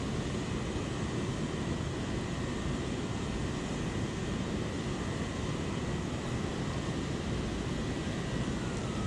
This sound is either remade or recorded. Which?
remade